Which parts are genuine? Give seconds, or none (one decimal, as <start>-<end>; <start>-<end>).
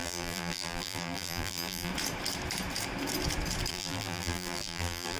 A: 1.9-3.7